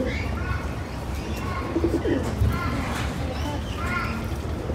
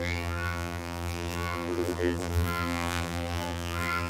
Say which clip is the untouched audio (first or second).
first